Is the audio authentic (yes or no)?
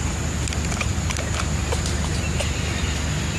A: yes